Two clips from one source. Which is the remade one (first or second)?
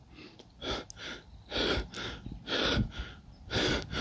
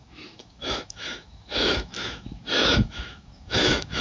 second